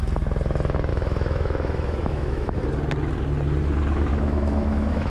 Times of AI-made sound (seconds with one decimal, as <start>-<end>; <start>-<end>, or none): 0.9-2.6; 4.1-5.1